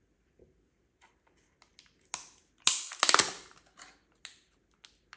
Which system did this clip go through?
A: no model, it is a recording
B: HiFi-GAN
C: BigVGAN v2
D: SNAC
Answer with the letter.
A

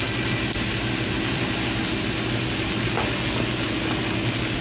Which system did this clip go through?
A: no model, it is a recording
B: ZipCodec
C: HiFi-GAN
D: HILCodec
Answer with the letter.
A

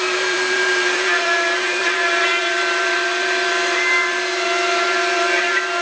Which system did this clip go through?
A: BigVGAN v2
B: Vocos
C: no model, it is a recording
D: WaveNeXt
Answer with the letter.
A